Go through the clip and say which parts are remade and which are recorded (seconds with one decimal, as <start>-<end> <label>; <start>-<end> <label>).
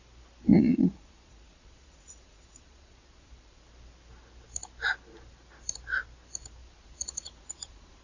0.0-0.5 recorded; 0.5-3.6 remade; 3.6-6.6 recorded; 6.6-8.0 remade